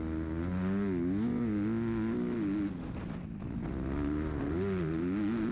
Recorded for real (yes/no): yes